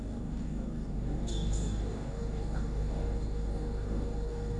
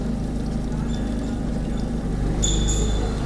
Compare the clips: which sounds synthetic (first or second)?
first